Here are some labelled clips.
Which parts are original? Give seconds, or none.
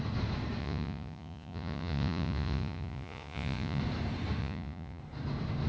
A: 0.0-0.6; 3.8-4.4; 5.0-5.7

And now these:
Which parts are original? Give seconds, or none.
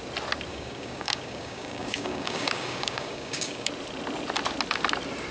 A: 0.0-0.5; 3.7-5.3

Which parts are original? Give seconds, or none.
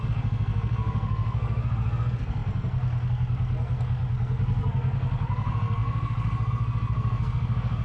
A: none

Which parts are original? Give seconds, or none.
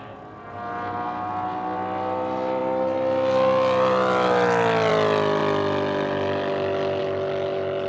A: 0.0-7.9